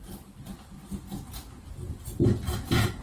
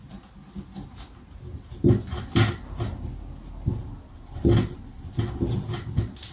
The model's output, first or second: first